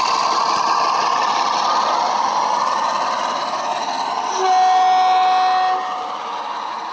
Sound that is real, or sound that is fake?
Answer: real